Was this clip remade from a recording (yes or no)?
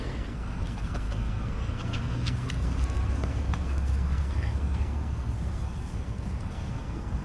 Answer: yes